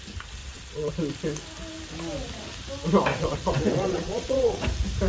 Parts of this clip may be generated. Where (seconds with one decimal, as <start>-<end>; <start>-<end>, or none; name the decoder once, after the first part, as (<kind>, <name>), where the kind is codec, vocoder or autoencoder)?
0.4-0.9 (vocoder, WaveNeXt); 3.1-4.6